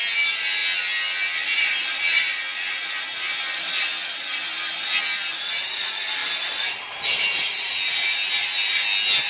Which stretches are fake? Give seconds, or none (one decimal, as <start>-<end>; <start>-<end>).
none